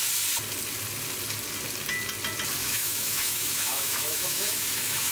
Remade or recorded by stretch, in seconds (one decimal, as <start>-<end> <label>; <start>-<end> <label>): 0.0-2.6 recorded; 2.6-5.1 remade